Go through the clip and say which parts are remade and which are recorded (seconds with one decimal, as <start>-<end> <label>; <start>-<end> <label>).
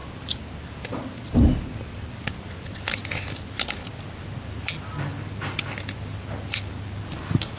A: 0.0-7.6 recorded